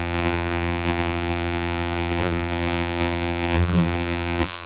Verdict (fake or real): fake